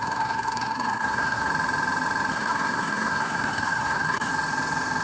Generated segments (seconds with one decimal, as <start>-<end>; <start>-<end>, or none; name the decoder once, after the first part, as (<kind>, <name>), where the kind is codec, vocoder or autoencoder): 0.0-1.5 (codec, SNAC); 2.3-4.3